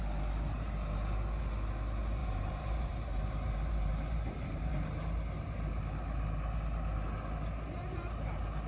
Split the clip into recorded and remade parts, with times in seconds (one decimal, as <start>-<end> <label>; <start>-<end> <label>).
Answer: 0.0-2.2 recorded; 2.2-4.7 remade; 4.7-8.7 recorded